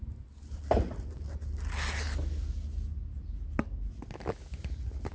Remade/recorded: recorded